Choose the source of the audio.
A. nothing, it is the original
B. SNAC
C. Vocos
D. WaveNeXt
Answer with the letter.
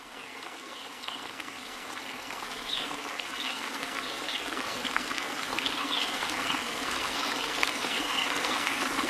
B